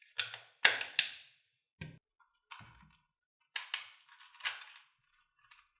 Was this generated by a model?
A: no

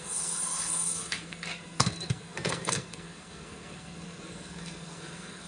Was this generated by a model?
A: yes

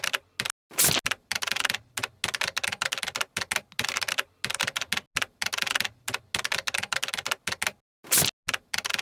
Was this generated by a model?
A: no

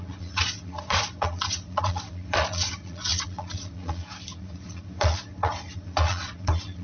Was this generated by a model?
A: yes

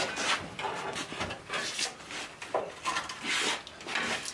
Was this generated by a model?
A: no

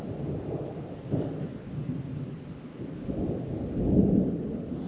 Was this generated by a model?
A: no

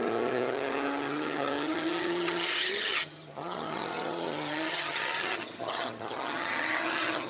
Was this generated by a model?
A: yes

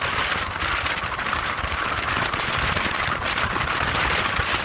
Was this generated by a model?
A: no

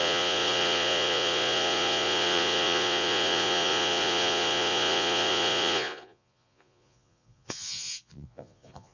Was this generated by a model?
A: yes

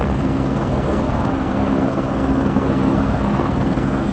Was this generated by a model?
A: yes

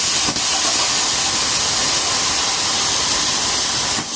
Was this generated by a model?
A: no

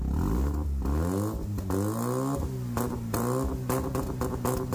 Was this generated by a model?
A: no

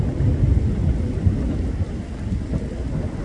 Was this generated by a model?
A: no